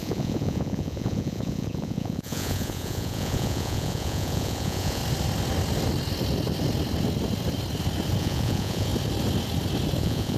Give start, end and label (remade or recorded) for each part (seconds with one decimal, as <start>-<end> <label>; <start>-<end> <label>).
0.0-5.0 remade; 5.0-8.2 recorded; 8.2-8.9 remade; 8.9-10.0 recorded; 10.0-10.4 remade